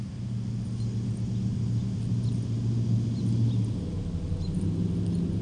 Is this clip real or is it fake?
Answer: real